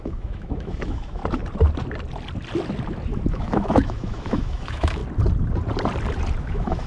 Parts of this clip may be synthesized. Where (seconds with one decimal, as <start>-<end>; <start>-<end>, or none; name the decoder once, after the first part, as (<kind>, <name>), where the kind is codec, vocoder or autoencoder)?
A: 0.0-1.2 (autoencoder, DAC-VAE); 3.3-5.0; 6.4-6.9